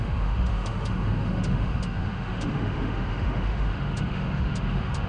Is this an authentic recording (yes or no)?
no